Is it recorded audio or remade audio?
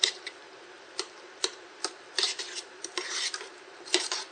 remade